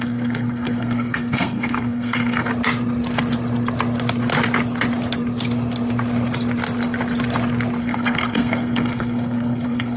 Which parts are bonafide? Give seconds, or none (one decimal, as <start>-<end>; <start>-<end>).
2.5-7.8